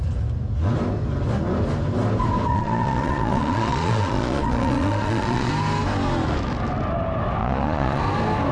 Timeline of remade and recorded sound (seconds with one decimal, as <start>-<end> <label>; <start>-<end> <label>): 0.0-2.5 recorded; 2.5-5.5 remade; 5.5-7.4 recorded; 7.4-8.0 remade; 8.0-8.5 recorded